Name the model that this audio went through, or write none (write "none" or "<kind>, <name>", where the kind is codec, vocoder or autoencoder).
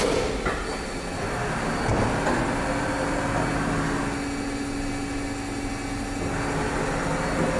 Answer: none